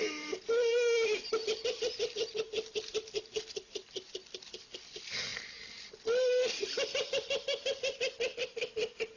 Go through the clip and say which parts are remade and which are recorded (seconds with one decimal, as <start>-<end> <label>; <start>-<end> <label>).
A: 0.0-9.2 recorded